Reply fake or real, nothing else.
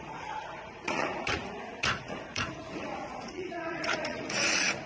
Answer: fake